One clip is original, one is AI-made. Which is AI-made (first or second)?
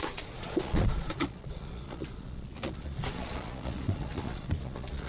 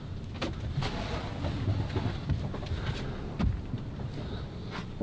first